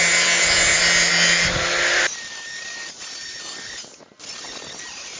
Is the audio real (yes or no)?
yes